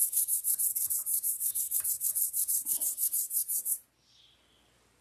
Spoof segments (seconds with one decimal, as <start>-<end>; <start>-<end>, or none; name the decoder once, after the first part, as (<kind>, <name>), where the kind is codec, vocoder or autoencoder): none